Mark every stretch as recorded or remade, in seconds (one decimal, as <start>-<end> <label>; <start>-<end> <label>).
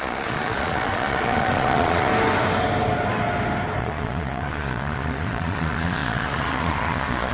0.0-2.1 remade; 2.1-3.8 recorded; 3.8-7.3 remade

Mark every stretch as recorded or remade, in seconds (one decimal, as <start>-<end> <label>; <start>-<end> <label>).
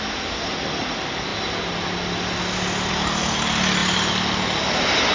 0.0-5.1 recorded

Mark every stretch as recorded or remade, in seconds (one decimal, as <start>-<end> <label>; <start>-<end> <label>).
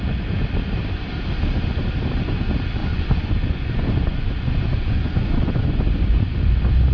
0.0-2.8 recorded; 2.8-6.5 remade; 6.5-6.9 recorded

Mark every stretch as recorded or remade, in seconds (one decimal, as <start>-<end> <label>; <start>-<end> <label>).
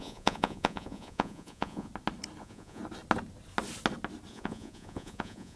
0.0-1.9 remade; 1.9-2.4 recorded; 2.4-2.8 remade; 2.8-4.3 recorded; 4.3-5.6 remade